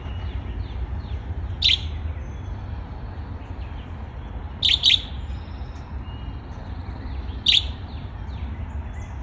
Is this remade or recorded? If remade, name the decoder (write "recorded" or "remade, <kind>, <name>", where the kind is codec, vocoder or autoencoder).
recorded